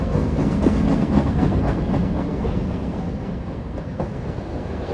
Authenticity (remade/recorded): remade